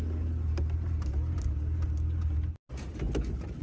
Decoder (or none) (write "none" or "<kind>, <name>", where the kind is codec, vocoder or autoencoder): none